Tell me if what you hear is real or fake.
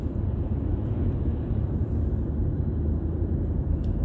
real